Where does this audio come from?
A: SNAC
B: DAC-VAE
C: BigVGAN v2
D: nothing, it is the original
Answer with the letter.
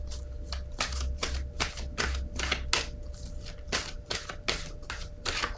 D